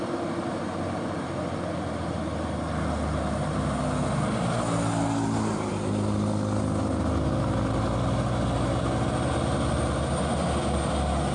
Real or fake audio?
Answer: real